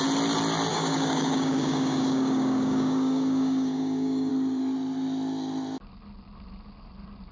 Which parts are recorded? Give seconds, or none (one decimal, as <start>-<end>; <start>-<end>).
0.0-0.7; 4.3-7.3